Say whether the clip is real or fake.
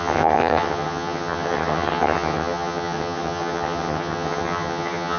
fake